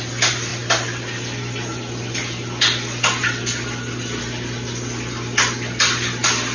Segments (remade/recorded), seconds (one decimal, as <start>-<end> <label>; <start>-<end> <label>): 0.0-6.5 recorded